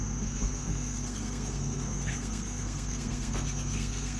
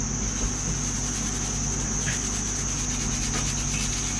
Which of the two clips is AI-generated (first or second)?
first